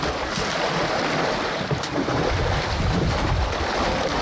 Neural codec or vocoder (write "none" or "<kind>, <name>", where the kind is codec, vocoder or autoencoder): vocoder, BigVGAN v2